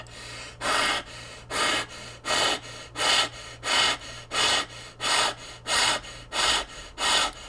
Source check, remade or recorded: recorded